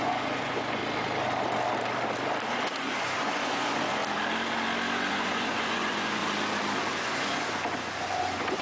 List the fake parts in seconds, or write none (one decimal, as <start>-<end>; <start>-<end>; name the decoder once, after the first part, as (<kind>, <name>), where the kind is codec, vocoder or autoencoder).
0.0-0.8 (vocoder, Vocos); 2.5-4.0; 5.1-6.2; 6.8-8.6